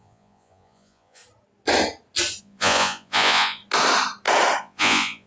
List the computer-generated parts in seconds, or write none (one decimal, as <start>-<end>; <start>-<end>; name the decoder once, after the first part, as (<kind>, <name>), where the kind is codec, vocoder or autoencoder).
0.0-1.2 (vocoder, Vocos); 2.4-3.6; 4.6-5.3